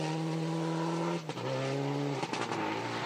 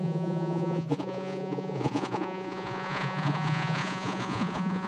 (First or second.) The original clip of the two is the first